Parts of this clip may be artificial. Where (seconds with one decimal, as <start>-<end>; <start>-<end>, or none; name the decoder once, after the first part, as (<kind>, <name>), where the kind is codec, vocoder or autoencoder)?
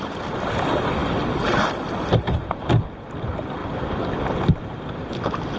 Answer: 3.6-5.6 (vocoder, BigVGAN v2)